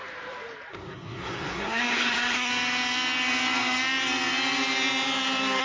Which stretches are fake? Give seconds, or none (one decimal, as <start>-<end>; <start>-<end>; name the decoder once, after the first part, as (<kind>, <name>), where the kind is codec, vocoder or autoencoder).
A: 0.7-2.5 (codec, SNAC)